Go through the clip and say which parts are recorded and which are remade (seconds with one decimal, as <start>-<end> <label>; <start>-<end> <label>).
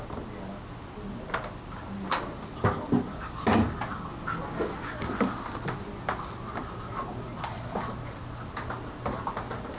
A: 0.0-9.8 recorded